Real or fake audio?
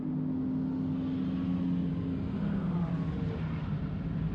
real